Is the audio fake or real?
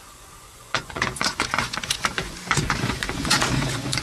fake